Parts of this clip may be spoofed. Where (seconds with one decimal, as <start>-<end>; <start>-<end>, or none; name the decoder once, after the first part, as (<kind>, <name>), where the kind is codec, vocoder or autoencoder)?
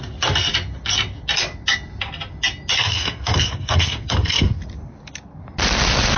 2.8-4.6 (codec, SNAC)